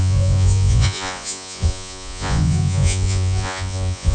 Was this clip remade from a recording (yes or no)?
yes